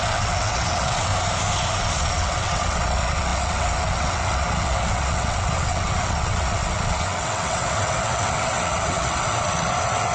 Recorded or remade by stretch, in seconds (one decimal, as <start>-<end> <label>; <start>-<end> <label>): 0.0-1.1 remade; 1.1-1.8 recorded; 1.8-10.1 remade